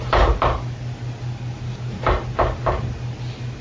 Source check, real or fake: real